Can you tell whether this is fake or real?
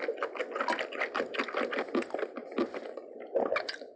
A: real